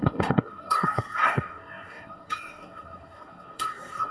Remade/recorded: remade